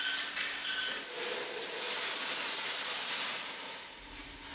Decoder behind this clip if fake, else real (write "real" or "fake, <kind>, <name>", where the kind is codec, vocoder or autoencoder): real